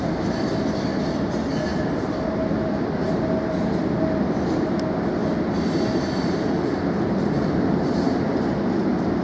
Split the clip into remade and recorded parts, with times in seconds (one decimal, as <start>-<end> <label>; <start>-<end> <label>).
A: 0.0-9.2 recorded